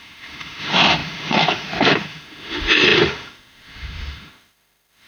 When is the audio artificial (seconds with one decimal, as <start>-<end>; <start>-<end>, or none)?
0.0-5.1